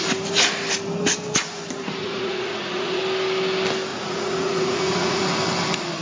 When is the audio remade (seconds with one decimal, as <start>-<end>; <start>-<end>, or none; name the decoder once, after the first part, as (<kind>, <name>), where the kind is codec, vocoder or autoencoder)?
2.0-3.0 (vocoder, Vocos); 3.9-5.2